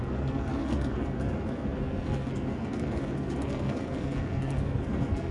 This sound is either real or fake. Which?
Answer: fake